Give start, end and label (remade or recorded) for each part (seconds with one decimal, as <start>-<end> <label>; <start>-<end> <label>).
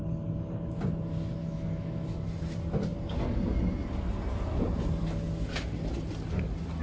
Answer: 0.0-1.4 recorded; 1.4-2.2 remade; 2.2-6.8 recorded